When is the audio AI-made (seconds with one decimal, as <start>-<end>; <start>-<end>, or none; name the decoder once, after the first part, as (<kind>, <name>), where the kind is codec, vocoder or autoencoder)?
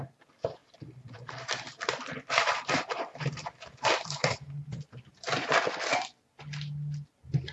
0.6-5.1 (vocoder, BigVGAN v2)